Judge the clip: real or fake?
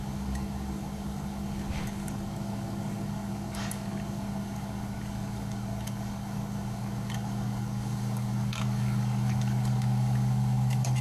fake